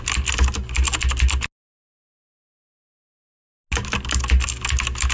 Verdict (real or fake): real